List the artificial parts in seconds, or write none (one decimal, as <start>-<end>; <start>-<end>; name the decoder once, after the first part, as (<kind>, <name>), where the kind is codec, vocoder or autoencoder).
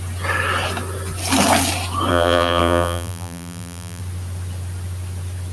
2.1-4.0 (vocoder, BigVGAN v2)